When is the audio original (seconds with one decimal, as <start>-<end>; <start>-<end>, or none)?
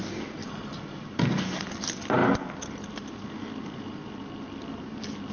0.0-0.4; 1.6-5.3